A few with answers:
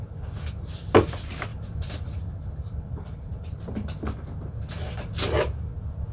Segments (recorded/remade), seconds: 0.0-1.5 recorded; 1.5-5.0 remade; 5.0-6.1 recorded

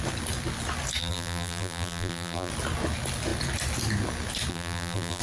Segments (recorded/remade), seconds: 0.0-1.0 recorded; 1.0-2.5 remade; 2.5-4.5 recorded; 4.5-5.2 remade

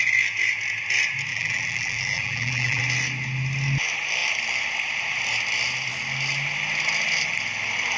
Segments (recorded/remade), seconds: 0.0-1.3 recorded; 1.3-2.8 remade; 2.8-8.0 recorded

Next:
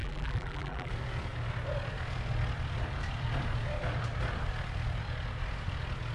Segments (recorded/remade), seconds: 0.0-0.9 remade; 0.9-6.1 recorded

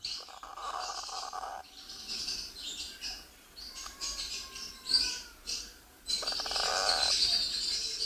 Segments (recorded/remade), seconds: 0.0-8.1 remade

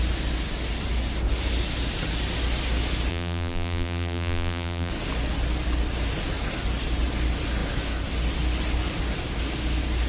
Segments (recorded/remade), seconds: 0.0-3.1 recorded; 3.1-4.9 remade; 4.9-10.1 recorded

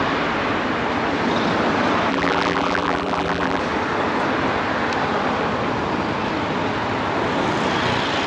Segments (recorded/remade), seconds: 0.0-2.1 recorded; 2.1-3.6 remade; 3.6-8.3 recorded